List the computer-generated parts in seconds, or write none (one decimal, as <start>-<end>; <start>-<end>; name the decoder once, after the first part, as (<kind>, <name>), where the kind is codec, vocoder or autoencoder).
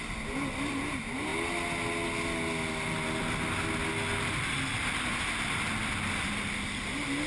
none